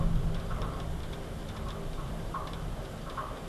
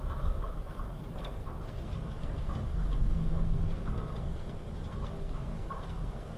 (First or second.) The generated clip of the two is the second